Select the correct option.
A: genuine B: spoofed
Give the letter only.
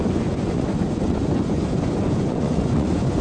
B